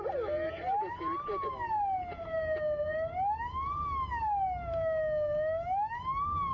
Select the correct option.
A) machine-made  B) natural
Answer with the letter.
B